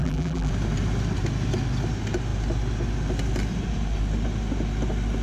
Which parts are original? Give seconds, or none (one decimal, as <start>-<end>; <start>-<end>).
0.5-5.2